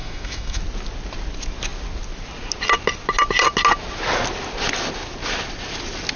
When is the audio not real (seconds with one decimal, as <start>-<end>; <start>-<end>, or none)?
0.0-0.6